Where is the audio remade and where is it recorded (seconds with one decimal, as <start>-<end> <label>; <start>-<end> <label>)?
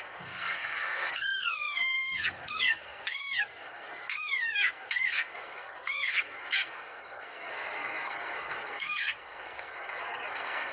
0.0-10.7 remade